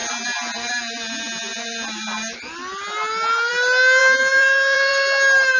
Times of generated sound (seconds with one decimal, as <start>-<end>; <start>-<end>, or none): 0.0-0.7; 4.0-4.9